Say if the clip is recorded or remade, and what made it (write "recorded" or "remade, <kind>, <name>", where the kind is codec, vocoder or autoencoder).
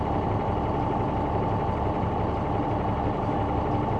recorded